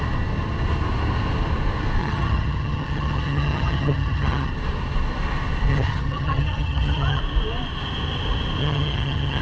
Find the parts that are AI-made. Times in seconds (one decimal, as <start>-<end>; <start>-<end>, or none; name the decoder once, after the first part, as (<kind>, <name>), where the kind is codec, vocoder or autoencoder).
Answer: 2.0-4.5 (vocoder, HiFi-GAN); 5.7-7.2; 8.6-9.4